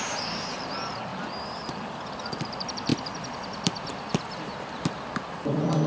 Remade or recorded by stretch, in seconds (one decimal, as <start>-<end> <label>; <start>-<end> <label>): 0.0-1.1 remade; 1.1-2.4 recorded; 2.4-5.9 remade